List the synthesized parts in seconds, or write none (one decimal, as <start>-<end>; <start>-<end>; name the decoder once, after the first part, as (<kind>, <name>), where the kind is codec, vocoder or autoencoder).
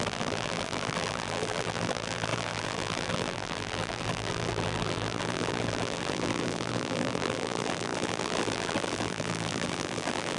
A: 0.0-10.4 (vocoder, BigVGAN v2)